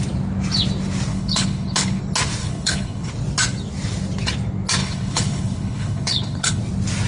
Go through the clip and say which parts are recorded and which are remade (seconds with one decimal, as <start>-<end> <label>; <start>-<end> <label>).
0.0-1.1 recorded; 1.1-2.0 remade; 2.0-2.4 recorded; 2.4-3.1 remade; 3.1-4.8 recorded; 4.8-6.6 remade; 6.6-7.1 recorded